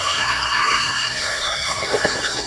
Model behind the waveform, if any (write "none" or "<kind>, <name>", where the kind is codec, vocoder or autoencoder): codec, SNAC